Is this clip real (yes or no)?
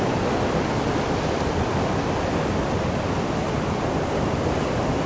yes